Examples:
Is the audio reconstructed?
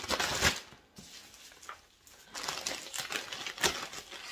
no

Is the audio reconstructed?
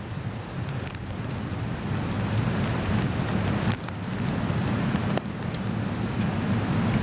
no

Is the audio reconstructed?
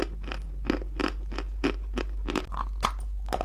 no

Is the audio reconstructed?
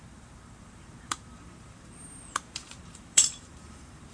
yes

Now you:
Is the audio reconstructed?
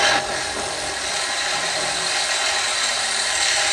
no